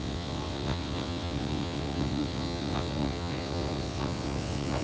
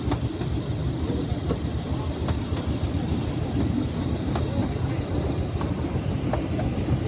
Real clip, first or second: second